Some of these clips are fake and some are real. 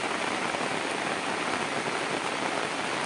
real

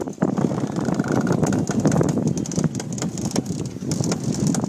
real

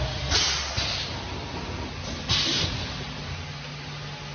real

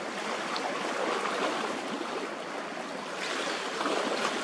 real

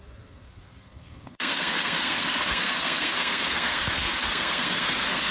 fake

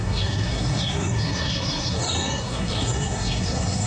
fake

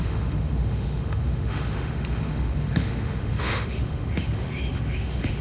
fake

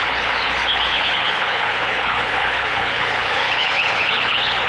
fake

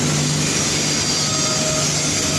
real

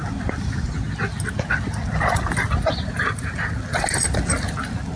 real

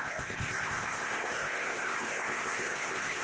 fake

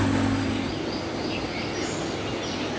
real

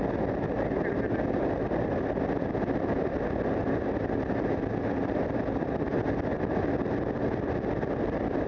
fake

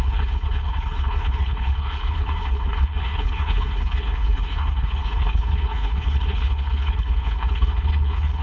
fake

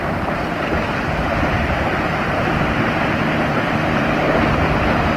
fake